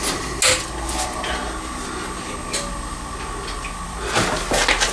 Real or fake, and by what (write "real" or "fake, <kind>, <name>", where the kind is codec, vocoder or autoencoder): real